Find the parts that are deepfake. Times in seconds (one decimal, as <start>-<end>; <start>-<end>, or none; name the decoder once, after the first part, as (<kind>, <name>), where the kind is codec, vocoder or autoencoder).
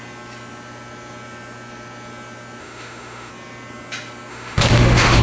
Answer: 2.6-3.3 (autoencoder, DAC-VAE); 4.3-5.2